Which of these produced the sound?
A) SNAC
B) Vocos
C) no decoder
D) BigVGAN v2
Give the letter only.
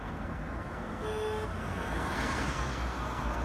A